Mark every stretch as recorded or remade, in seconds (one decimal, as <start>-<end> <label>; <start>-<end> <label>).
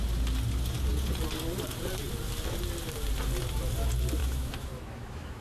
0.0-4.2 recorded; 4.2-5.4 remade